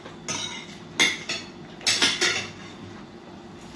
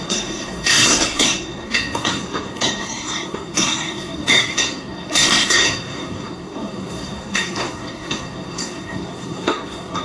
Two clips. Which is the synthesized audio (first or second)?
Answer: second